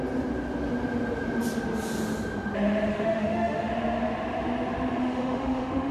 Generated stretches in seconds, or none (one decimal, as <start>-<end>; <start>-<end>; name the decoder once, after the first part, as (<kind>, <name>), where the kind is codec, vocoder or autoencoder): 2.9-3.7 (autoencoder, DAC-VAE); 5.0-5.9